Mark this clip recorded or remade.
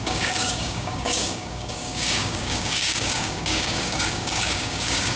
remade